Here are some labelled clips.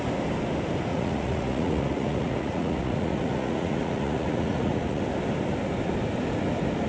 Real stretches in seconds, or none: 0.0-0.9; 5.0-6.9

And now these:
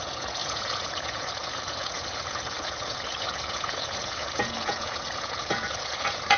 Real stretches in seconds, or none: none

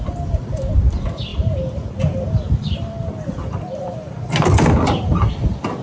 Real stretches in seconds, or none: 0.0-5.8

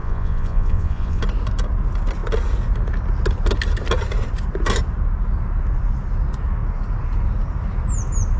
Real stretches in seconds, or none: 1.2-8.4

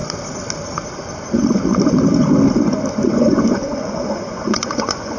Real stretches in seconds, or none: 0.0-3.1